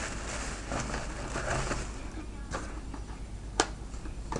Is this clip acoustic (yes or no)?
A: yes